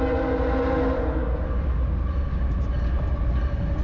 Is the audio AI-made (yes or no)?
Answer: no